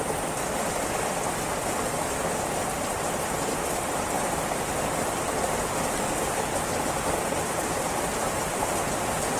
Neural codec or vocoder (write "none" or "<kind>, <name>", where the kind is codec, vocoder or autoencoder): none